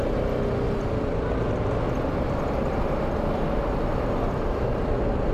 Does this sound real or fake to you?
real